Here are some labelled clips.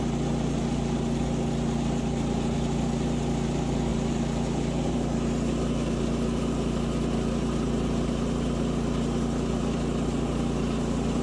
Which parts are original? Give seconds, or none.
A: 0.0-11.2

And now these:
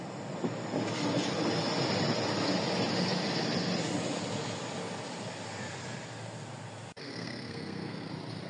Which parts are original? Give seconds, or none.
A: 0.0-7.0; 8.1-8.5

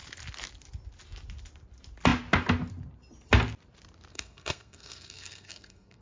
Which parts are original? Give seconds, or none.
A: 0.0-4.1

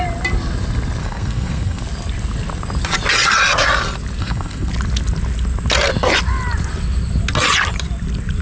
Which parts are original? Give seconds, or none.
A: 0.0-1.0; 1.8-4.2; 4.7-8.4

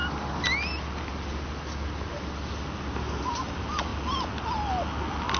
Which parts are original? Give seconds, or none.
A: 0.0-5.4

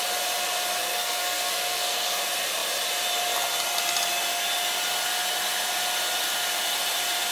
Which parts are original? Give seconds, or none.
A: 0.0-0.8; 2.2-7.3

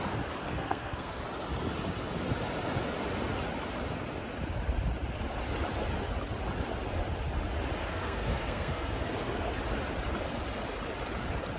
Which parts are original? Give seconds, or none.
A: 0.0-0.4; 1.2-7.8; 9.5-11.6

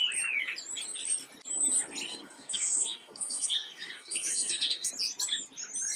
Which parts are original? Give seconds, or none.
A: 0.0-2.1; 4.9-6.0